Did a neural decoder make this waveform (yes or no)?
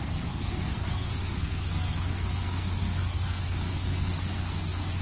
yes